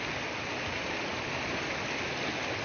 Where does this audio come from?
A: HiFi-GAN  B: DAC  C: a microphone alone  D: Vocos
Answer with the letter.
C